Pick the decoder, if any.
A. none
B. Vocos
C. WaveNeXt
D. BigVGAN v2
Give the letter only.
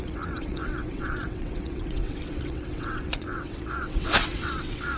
C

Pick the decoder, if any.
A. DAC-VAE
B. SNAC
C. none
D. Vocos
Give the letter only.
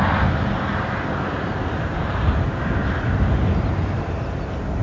C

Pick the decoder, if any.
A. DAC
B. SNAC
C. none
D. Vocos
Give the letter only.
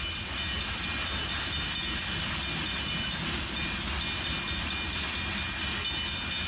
C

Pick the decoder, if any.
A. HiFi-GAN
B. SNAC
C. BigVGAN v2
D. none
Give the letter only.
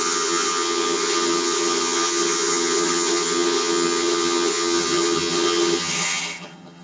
A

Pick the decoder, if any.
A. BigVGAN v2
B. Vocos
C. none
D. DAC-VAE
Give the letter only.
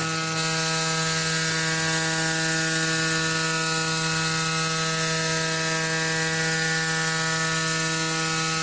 C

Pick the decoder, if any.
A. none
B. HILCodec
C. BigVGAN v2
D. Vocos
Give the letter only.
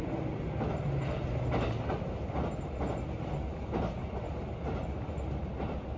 A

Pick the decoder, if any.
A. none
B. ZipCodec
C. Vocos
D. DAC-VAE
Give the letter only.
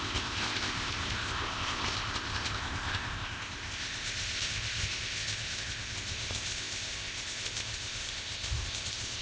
B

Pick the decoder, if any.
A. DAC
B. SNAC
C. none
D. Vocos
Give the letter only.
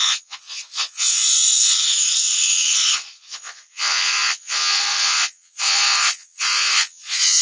D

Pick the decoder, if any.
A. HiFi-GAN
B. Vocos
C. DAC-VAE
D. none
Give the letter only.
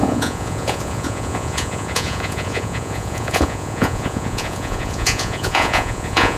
B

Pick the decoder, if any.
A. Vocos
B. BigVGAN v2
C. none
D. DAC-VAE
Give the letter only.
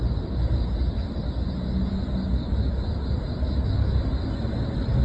C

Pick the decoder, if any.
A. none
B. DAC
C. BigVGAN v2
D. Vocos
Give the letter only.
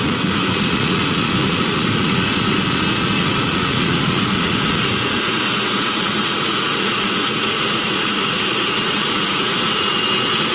D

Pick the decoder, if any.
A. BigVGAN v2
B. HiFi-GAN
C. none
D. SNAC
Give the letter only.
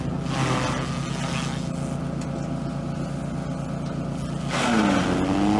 C